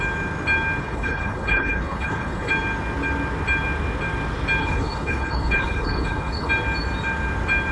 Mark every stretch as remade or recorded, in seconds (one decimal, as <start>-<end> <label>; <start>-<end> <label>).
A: 0.0-0.8 recorded; 0.8-2.5 remade; 2.5-4.6 recorded; 4.6-6.5 remade; 6.5-7.7 recorded